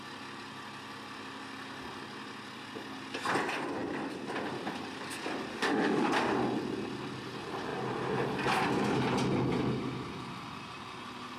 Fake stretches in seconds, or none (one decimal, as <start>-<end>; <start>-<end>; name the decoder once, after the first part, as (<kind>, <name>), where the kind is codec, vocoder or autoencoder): 5.5-6.1 (autoencoder, DAC-VAE)